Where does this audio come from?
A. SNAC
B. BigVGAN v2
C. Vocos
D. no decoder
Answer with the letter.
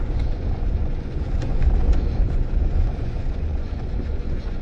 C